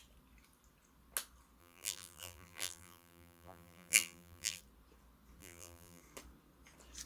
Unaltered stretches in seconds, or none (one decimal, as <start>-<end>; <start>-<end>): 0.0-1.6; 4.6-5.4; 6.0-7.1